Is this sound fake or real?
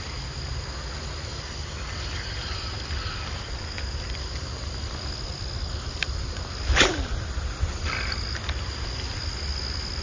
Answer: real